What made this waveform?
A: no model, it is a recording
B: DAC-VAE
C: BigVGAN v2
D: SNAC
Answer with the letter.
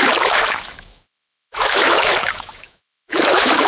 B